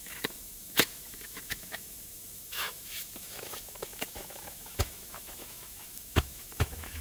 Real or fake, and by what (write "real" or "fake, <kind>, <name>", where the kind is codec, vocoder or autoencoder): fake, autoencoder, DAC-VAE